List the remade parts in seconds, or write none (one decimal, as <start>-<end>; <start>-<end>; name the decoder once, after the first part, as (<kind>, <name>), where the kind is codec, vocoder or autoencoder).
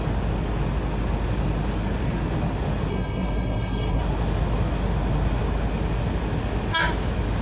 2.9-4.0 (codec, SNAC)